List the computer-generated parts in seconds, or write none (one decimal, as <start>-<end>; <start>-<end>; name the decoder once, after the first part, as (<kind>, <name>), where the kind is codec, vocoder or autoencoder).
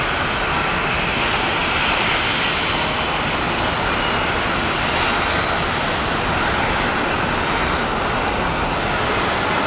none